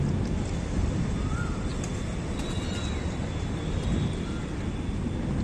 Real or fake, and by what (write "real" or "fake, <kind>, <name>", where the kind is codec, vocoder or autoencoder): real